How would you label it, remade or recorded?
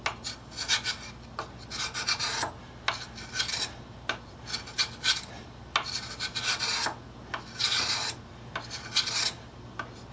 recorded